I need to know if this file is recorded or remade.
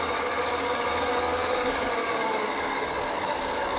remade